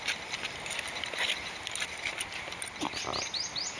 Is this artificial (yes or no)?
no